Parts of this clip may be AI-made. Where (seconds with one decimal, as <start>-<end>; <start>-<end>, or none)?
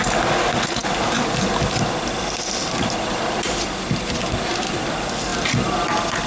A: none